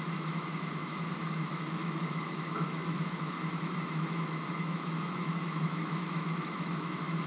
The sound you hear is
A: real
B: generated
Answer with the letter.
B